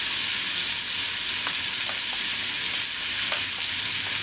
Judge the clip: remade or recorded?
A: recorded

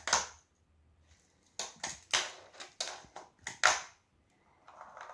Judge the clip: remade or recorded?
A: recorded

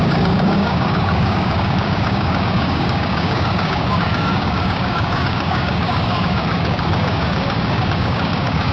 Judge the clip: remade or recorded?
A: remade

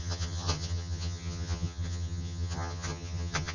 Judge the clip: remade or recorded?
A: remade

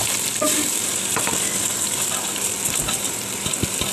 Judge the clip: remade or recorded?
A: remade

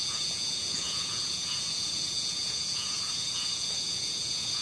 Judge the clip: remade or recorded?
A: remade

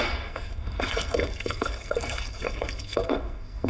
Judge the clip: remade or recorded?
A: remade